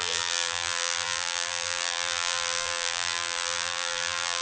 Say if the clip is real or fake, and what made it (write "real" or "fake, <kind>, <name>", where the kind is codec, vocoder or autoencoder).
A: fake, vocoder, BigVGAN v2